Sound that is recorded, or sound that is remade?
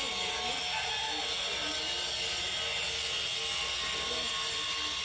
recorded